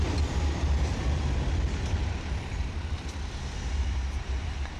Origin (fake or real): fake